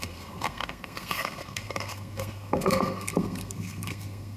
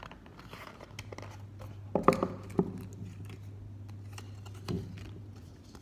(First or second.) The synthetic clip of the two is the first